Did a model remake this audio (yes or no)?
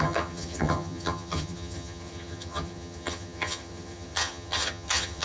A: yes